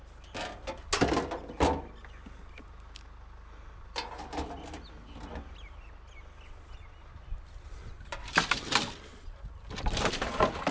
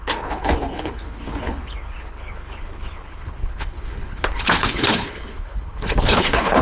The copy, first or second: second